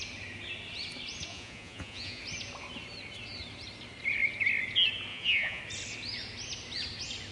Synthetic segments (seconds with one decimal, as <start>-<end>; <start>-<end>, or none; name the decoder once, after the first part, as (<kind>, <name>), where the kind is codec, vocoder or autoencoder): 1.3-2.2 (vocoder, Vocos); 5.1-5.6